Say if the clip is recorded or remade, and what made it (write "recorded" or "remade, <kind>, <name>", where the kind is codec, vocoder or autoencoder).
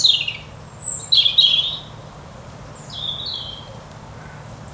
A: recorded